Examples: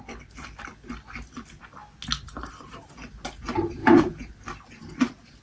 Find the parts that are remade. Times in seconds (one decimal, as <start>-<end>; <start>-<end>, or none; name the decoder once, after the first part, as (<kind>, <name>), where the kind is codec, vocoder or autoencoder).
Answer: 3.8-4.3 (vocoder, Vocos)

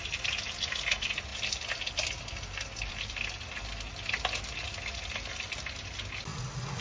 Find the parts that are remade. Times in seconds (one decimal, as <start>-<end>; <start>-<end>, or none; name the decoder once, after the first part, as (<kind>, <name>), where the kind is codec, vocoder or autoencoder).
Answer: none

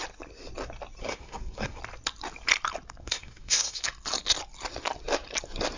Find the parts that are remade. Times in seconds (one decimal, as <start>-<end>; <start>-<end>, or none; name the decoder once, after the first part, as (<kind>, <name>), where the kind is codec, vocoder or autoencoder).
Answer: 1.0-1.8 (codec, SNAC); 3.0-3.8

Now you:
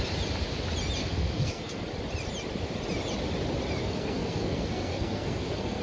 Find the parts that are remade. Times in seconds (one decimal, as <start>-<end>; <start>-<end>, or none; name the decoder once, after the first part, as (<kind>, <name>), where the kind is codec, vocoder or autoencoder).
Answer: 1.0-1.8 (codec, SNAC); 3.8-5.8